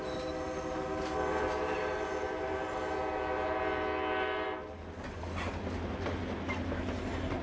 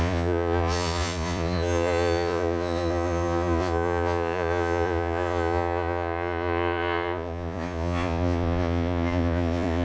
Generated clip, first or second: second